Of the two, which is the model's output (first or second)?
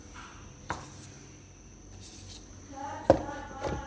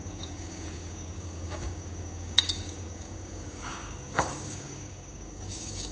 second